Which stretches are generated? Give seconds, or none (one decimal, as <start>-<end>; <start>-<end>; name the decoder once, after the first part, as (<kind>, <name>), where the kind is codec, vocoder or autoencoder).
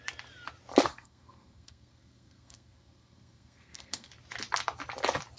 0.9-4.1 (codec, SNAC)